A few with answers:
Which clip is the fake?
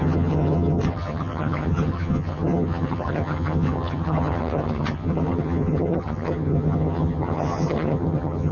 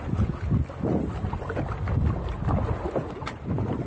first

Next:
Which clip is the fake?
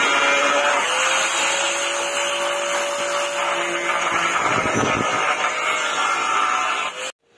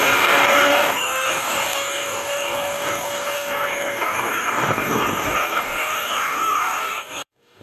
second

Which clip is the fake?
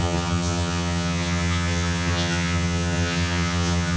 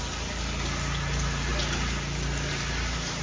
first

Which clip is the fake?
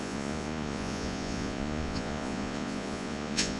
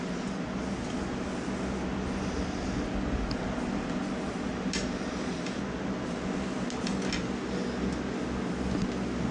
first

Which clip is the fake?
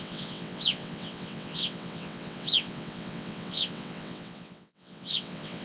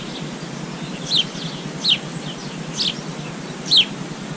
first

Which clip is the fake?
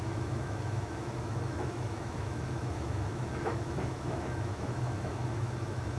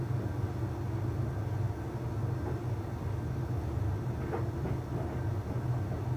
first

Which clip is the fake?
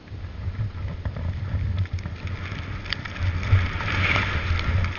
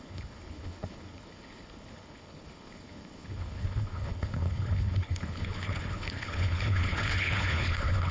second